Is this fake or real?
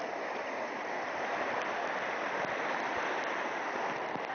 real